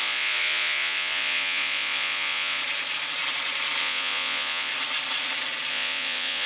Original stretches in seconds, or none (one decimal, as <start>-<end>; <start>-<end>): 2.6-3.8; 4.7-5.7